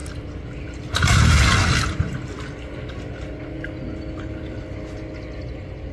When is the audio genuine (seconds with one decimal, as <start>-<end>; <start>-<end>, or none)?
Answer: 0.0-5.9